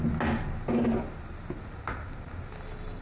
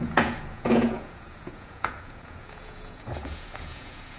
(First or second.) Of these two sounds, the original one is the first